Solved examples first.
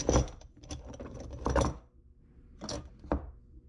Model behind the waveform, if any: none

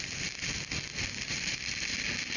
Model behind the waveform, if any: none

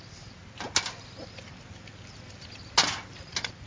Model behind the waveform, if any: none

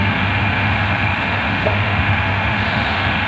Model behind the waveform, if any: autoencoder, DAC-VAE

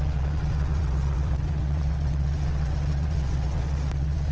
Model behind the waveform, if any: vocoder, WaveNeXt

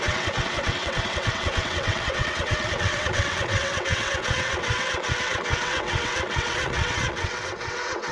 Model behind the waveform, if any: vocoder, WaveNeXt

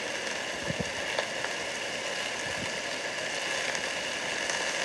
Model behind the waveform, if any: none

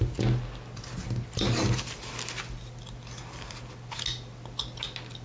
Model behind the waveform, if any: none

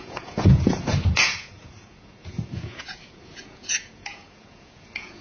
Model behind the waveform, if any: vocoder, Vocos